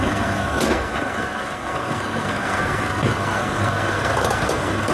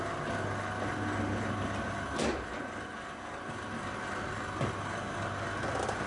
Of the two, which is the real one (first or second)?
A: second